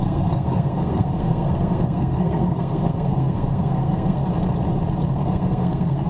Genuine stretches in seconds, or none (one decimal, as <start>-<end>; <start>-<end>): 4.2-5.1